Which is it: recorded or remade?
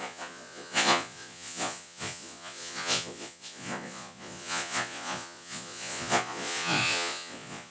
remade